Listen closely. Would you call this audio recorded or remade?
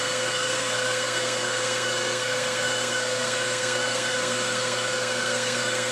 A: remade